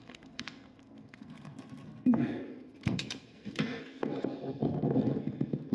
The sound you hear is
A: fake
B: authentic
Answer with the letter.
A